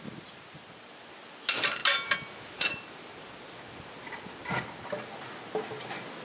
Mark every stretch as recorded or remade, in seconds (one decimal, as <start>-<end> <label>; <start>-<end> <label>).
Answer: 0.0-6.2 recorded